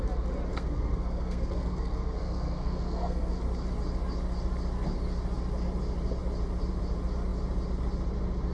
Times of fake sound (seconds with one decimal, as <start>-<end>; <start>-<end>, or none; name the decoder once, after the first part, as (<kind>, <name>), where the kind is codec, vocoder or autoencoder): 0.5-3.4 (codec, SNAC)